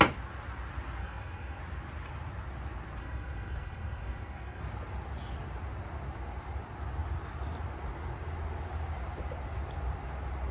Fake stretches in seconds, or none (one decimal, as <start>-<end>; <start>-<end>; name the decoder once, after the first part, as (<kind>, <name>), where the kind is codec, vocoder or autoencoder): 1.0-1.6 (codec, SNAC); 3.0-4.6